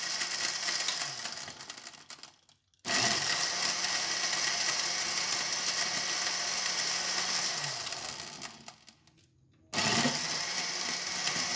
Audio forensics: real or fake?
real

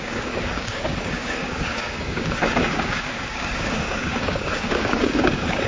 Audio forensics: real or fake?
fake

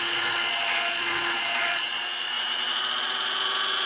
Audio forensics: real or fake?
fake